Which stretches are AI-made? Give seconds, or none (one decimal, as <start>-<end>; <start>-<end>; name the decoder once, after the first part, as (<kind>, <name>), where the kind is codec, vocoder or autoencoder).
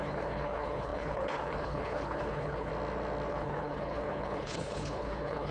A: 0.0-2.7 (codec, HILCodec); 3.3-5.5